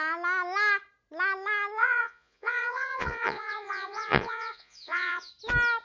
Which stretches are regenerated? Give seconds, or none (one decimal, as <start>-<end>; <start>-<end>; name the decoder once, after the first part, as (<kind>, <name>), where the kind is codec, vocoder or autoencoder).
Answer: 1.8-5.3 (vocoder, Vocos)